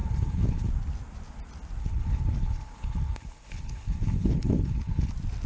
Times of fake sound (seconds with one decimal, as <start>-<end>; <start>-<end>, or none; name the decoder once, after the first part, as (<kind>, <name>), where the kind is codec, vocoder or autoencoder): 0.0-0.7 (codec, HILCodec); 1.8-5.1